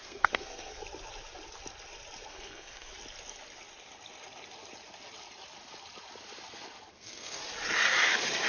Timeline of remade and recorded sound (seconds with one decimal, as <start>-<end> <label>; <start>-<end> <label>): 0.0-0.8 remade; 0.8-2.3 recorded; 2.3-2.9 remade; 2.9-6.9 recorded; 6.9-7.4 remade; 7.4-8.5 recorded